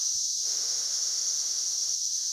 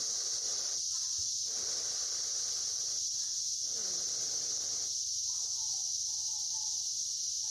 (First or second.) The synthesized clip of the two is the first